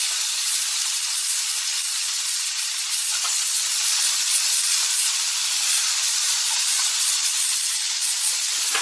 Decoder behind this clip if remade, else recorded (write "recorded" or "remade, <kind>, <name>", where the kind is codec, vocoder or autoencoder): remade, vocoder, Vocos